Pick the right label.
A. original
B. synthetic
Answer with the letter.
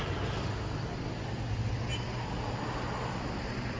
A